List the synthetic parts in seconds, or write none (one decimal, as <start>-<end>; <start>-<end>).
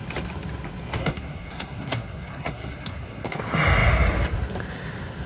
1.0-3.4